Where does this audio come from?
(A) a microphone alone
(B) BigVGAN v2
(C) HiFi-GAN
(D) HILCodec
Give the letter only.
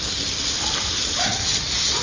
A